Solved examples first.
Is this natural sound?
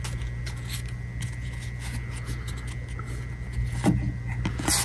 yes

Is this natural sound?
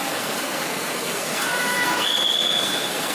no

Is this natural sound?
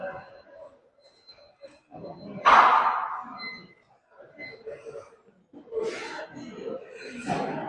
yes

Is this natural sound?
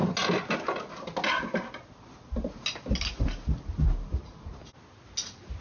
yes